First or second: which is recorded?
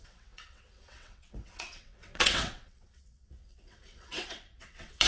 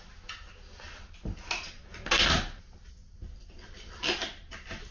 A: second